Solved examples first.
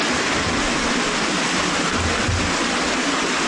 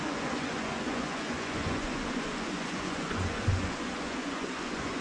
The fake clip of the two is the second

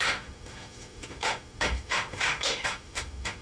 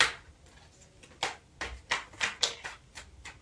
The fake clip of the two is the first